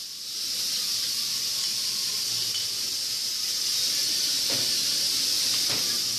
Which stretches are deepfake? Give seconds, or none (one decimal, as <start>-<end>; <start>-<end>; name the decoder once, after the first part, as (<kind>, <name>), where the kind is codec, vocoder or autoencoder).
none

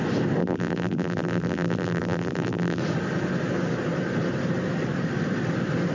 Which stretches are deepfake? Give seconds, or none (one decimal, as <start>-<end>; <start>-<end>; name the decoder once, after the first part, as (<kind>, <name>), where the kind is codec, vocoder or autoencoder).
0.4-2.8 (vocoder, BigVGAN v2)

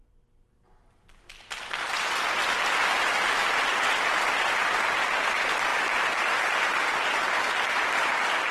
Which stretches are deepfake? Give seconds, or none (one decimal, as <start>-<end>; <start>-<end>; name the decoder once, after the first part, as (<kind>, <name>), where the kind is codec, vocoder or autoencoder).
0.0-0.6 (vocoder, BigVGAN v2); 1.8-3.4; 4.1-8.5

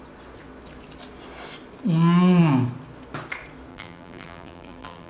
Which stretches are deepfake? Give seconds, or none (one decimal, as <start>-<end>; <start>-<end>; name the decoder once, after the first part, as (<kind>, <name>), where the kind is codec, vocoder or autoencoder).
3.7-5.1 (vocoder, BigVGAN v2)

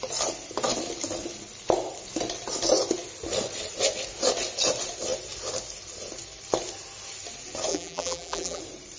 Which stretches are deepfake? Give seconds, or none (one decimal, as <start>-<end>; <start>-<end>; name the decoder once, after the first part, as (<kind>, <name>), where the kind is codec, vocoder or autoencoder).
7.7-8.6 (vocoder, BigVGAN v2)

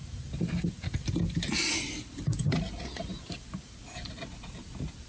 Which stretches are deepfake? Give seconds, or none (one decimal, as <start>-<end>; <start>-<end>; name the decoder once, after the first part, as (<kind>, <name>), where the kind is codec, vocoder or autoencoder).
none

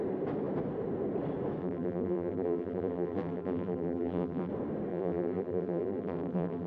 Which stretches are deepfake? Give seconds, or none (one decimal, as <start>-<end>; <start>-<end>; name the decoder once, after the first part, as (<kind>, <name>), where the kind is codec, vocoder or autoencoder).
1.6-4.5 (vocoder, BigVGAN v2); 4.9-6.7